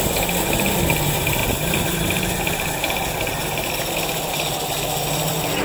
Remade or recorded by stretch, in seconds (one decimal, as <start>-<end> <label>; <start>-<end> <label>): 0.0-5.6 recorded